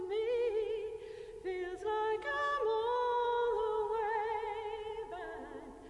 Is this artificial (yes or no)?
no